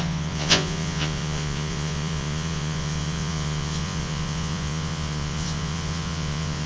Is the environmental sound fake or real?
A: fake